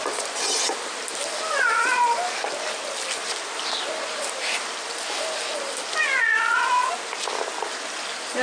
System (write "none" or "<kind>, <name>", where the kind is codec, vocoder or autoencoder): none